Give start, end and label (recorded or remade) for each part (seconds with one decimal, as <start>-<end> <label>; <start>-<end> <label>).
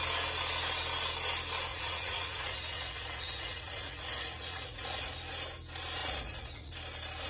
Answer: 0.0-1.7 recorded; 1.7-5.0 remade; 5.0-6.0 recorded; 6.0-6.7 remade; 6.7-7.3 recorded